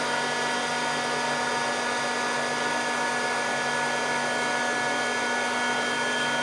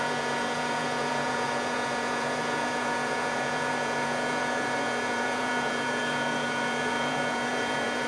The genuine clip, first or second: first